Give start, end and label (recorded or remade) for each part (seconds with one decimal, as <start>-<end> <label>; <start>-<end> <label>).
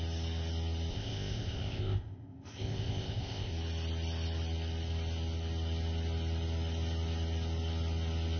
0.0-0.9 recorded; 0.9-3.5 remade; 3.5-8.4 recorded